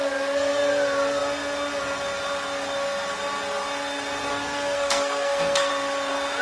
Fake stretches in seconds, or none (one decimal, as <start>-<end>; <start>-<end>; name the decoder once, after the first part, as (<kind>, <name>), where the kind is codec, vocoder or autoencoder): 4.3-5.7 (codec, SNAC)